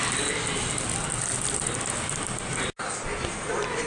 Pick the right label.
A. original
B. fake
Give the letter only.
A